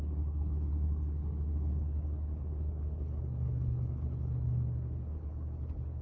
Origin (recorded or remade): remade